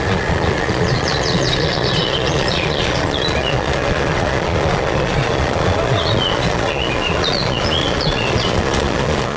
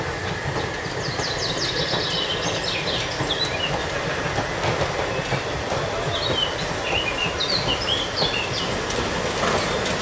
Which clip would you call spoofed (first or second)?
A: first